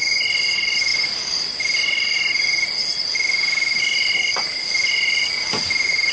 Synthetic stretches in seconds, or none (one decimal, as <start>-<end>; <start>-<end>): none